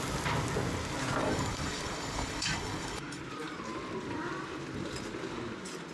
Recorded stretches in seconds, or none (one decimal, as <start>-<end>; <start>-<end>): 0.0-1.2; 3.2-5.9